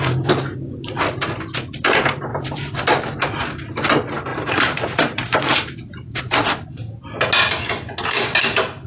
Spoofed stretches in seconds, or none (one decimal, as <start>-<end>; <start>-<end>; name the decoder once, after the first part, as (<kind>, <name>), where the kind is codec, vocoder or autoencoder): 2.3-2.8 (vocoder, BigVGAN v2); 4.3-6.2